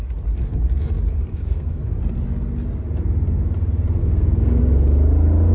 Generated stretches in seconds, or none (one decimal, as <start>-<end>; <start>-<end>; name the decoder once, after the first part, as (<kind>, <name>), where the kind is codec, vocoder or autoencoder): 1.3-1.8 (codec, SNAC); 4.0-4.6

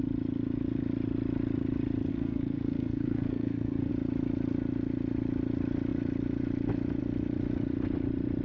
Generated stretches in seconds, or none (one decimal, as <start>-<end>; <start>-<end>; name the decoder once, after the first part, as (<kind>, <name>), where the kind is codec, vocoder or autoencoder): 2.1-3.9 (codec, SNAC)

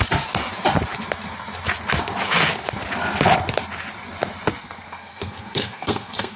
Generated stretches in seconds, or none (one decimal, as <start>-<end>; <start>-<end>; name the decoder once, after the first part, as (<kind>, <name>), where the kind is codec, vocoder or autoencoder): 4.6-6.4 (codec, SNAC)